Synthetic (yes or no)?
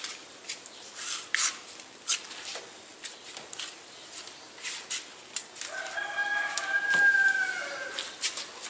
no